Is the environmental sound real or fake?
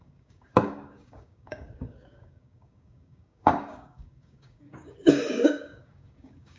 fake